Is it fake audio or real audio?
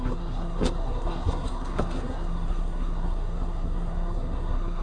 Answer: fake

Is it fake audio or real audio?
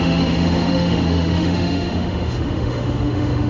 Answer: fake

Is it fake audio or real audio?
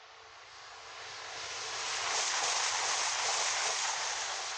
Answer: real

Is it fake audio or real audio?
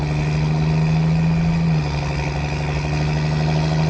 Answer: real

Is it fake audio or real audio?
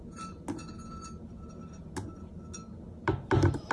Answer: real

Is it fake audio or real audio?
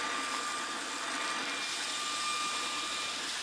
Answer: real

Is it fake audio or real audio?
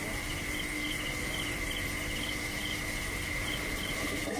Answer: real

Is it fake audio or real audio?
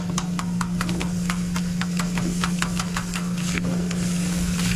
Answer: fake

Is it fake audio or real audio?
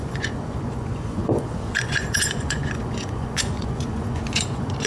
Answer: fake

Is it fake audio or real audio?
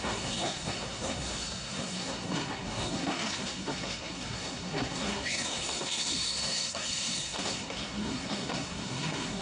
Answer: fake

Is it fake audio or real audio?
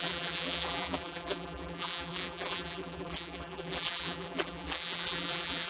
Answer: fake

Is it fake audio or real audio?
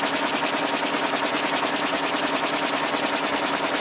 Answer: real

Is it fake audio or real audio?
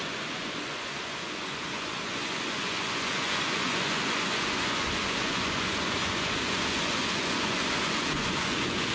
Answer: fake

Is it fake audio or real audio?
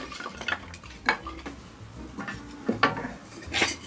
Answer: real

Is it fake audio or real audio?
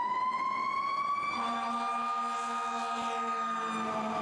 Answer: real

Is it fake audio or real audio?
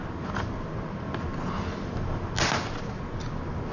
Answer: real